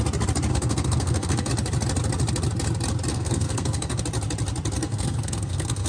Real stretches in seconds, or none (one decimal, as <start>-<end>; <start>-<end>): 0.0-0.5; 1.5-3.1; 4.0-4.8